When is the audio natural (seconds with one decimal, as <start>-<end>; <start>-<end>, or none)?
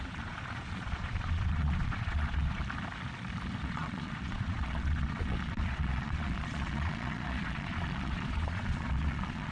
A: 2.6-3.6